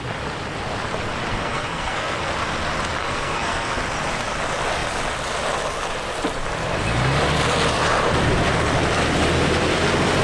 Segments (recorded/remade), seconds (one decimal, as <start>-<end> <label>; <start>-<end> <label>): 0.0-1.3 recorded; 1.3-2.3 remade; 2.3-3.0 recorded; 3.0-3.8 remade; 3.8-10.2 recorded